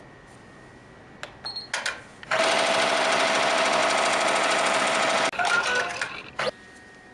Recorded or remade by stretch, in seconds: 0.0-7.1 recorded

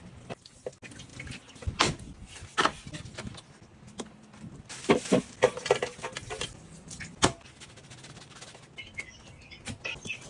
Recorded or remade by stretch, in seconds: 0.0-10.3 recorded